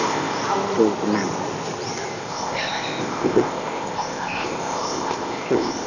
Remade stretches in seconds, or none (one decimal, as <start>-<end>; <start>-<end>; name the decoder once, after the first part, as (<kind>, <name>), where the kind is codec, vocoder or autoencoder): 0.0-0.4 (codec, ZipCodec); 2.2-5.9